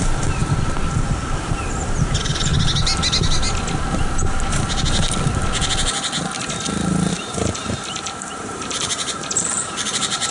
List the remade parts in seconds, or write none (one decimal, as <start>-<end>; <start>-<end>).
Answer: 0.0-0.4; 0.9-2.5; 7.1-10.3